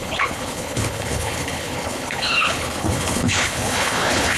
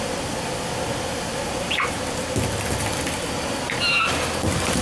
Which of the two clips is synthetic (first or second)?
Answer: first